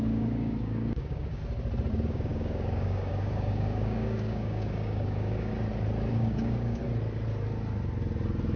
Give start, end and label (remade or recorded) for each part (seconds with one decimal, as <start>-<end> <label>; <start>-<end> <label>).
0.0-1.4 remade; 1.4-1.9 recorded; 1.9-5.5 remade; 5.5-6.1 recorded; 6.1-6.8 remade; 6.8-8.6 recorded